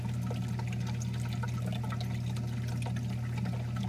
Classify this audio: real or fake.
real